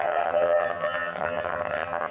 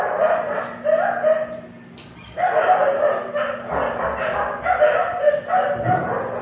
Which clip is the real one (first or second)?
second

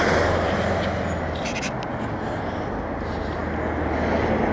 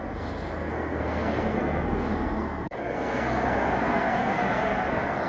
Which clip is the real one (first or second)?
first